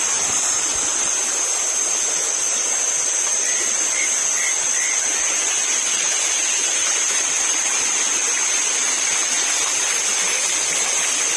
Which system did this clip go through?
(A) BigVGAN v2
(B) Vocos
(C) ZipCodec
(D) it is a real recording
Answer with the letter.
D